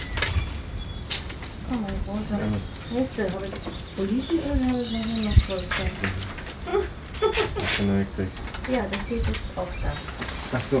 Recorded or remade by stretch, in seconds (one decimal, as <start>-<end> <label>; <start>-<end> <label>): 0.0-3.9 recorded; 3.9-4.9 remade; 4.9-10.8 recorded